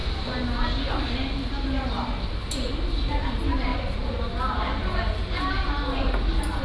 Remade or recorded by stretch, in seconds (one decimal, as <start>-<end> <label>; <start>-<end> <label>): 0.0-6.6 recorded